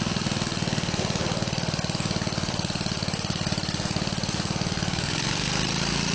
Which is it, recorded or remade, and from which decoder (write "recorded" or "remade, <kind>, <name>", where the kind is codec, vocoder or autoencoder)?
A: recorded